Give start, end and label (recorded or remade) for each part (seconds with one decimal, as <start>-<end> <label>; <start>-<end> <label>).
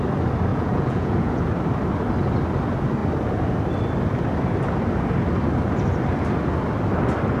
0.0-0.5 recorded; 0.5-1.4 remade; 1.4-7.4 recorded